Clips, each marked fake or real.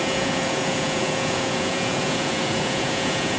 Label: fake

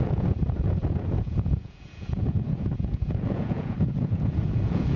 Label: fake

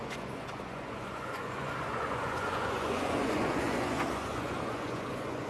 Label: fake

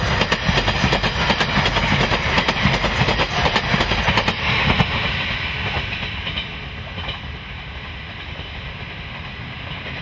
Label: real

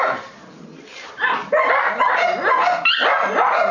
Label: real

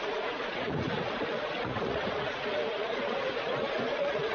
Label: fake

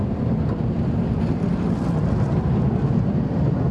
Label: real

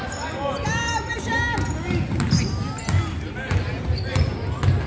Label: real